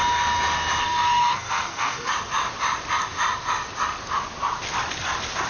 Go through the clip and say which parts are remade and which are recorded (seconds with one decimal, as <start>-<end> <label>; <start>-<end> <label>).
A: 0.0-0.8 recorded; 0.8-2.1 remade; 2.1-5.5 recorded